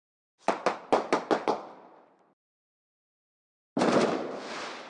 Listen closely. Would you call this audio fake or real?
real